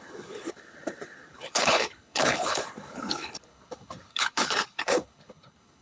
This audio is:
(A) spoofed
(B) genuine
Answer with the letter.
A